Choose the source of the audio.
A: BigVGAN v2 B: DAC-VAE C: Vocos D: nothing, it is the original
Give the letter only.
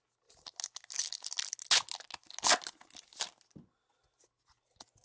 D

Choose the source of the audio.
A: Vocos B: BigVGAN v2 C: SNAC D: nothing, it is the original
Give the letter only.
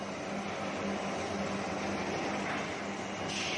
D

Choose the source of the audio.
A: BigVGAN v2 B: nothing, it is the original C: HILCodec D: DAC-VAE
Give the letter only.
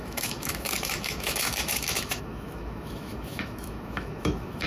D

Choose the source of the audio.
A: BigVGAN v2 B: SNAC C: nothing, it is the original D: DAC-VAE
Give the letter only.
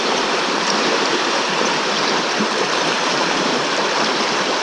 A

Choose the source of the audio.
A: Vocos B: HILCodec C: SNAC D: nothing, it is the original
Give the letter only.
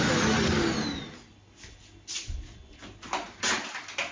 D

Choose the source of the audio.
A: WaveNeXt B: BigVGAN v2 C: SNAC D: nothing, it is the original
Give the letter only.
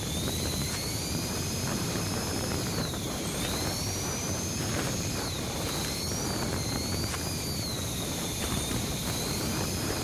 B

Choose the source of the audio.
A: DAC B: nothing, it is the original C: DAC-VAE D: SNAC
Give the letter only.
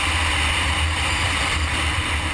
B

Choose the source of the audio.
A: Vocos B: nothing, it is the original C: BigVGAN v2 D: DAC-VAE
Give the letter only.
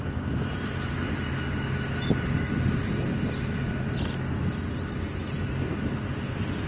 B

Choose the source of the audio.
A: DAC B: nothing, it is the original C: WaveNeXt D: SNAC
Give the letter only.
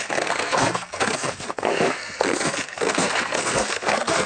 D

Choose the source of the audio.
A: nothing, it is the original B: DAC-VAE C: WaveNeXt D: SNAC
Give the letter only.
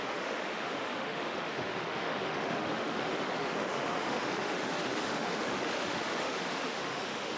B